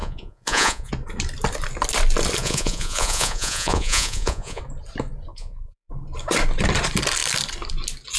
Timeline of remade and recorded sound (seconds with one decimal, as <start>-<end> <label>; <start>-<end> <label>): 0.0-0.9 remade; 0.9-2.4 recorded; 2.4-4.6 remade; 4.6-5.3 recorded; 5.3-5.9 remade; 5.9-8.2 recorded